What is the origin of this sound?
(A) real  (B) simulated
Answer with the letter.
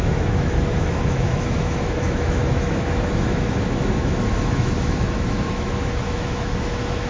B